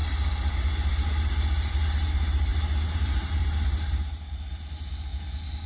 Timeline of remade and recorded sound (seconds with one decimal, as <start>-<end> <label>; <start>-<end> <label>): 0.0-2.5 recorded; 2.5-3.4 remade; 3.4-5.7 recorded